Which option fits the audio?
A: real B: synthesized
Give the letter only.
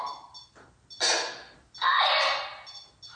A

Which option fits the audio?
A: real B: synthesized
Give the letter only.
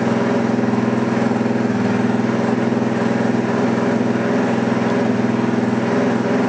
A